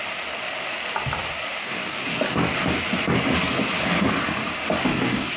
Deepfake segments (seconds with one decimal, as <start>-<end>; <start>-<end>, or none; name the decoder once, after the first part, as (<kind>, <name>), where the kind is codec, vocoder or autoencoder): 1.6-2.1 (codec, DAC); 4.9-5.4